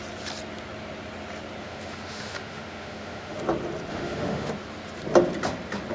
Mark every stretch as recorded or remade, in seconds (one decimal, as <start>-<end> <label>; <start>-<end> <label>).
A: 0.0-1.6 recorded; 1.6-3.4 remade; 3.4-3.9 recorded; 3.9-4.5 remade; 4.5-5.9 recorded